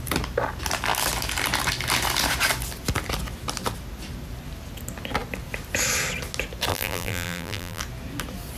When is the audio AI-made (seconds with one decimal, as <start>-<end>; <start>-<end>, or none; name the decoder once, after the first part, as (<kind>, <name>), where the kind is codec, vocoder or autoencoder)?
6.7-7.8 (vocoder, BigVGAN v2)